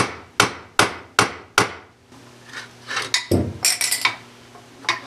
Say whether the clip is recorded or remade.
recorded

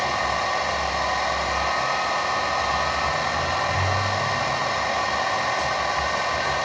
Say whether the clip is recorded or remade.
recorded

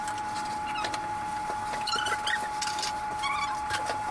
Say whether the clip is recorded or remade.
recorded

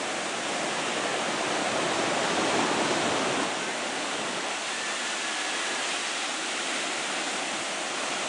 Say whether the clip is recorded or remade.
recorded